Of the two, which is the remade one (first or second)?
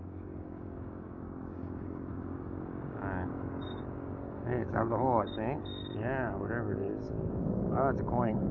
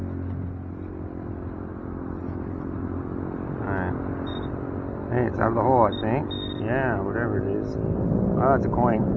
first